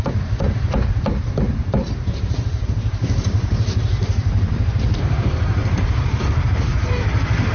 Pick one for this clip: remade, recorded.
remade